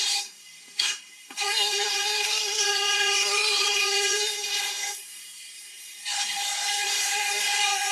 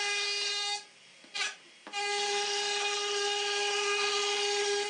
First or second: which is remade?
first